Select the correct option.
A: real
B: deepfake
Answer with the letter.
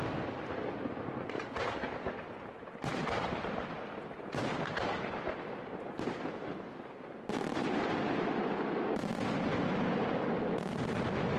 A